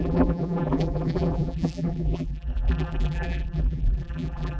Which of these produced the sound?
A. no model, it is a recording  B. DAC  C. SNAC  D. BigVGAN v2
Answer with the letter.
D